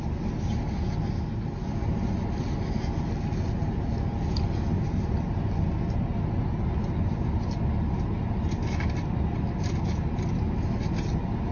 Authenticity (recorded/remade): recorded